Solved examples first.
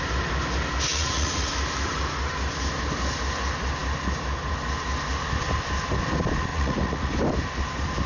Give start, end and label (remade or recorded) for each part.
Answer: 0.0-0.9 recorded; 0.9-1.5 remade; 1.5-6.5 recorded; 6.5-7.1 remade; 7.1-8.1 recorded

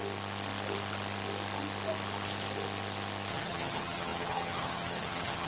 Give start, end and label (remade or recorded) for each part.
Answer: 0.0-3.3 recorded; 3.3-5.5 remade

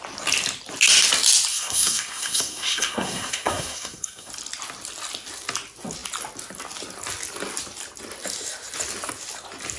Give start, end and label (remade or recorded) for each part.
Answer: 0.0-1.5 recorded; 1.5-4.3 remade; 4.3-9.8 recorded

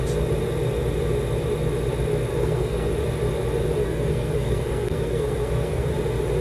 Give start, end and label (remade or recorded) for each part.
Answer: 0.0-2.3 recorded; 2.3-2.9 remade; 2.9-3.8 recorded; 3.8-5.9 remade; 5.9-6.4 recorded

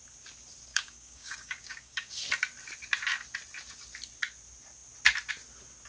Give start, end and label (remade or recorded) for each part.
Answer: 0.0-0.7 recorded; 0.7-2.1 remade; 2.1-5.9 recorded